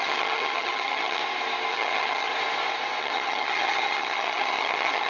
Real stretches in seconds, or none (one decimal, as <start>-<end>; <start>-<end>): 1.2-1.7; 2.3-3.0